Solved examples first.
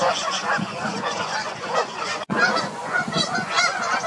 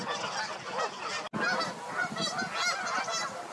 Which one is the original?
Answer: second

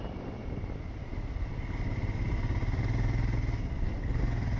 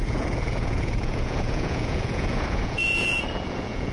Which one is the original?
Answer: first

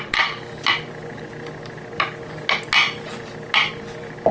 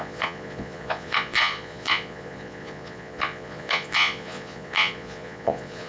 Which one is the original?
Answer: first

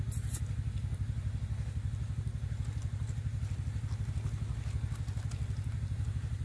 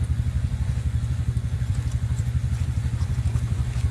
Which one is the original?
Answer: first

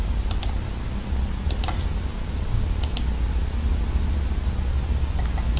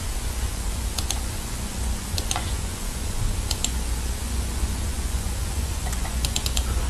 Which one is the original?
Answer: first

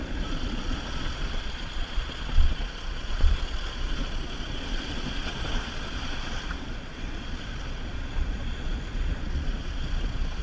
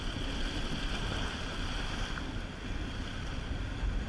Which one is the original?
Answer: second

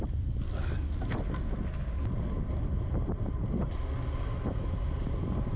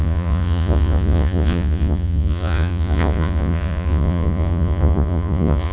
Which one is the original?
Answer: first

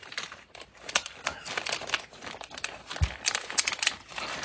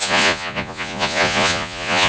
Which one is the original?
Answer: first